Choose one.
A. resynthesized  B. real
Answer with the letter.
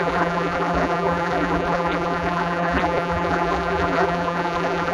A